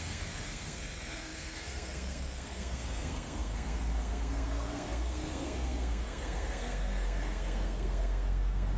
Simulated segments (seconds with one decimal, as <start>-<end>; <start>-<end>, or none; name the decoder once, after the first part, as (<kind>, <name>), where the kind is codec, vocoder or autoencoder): 0.0-8.8 (codec, SNAC)